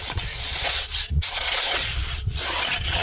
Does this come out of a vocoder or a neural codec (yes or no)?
yes